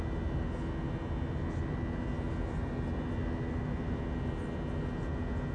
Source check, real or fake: real